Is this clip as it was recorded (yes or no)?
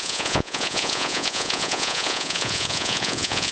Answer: no